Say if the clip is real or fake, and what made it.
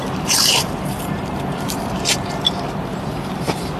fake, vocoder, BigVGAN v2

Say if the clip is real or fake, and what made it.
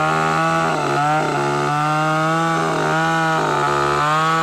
real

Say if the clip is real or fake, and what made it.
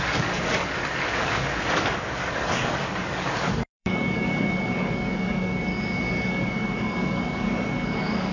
fake, codec, DAC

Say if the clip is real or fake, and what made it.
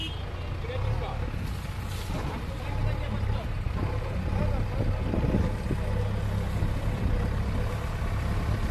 real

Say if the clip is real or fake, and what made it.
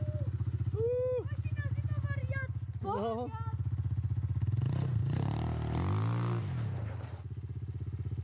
real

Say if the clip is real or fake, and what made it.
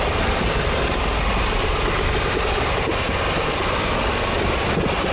real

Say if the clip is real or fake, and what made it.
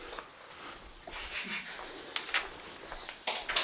real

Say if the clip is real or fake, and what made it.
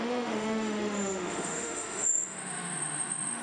fake, autoencoder, DAC-VAE